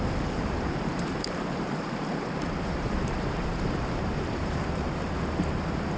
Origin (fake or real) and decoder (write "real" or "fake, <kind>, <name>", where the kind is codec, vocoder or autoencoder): fake, vocoder, BigVGAN v2